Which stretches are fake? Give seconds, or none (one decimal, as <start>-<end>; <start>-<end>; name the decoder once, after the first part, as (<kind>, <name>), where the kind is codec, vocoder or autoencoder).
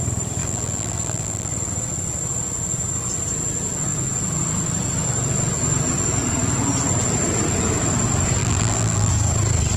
0.4-1.5 (vocoder, BigVGAN v2); 8.4-9.1